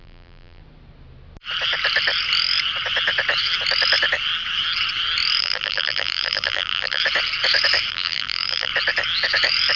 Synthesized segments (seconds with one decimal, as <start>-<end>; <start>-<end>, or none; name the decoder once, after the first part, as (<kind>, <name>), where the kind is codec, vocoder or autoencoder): 0.0-0.6 (vocoder, BigVGAN v2); 5.4-7.0; 7.9-8.7